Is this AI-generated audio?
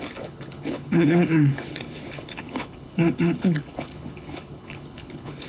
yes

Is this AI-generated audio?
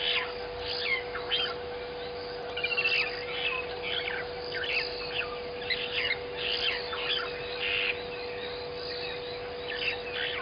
no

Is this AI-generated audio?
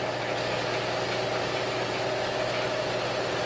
no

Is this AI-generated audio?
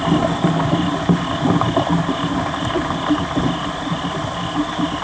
no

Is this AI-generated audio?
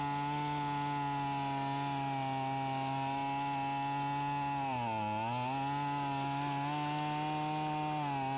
no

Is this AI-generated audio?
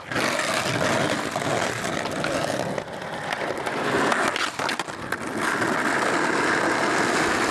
no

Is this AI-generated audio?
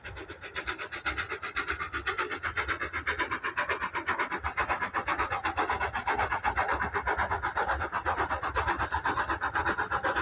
no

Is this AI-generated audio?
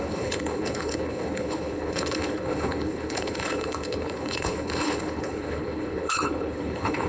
yes